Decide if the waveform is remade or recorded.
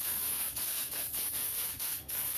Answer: remade